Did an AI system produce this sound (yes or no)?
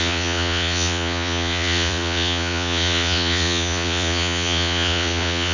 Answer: yes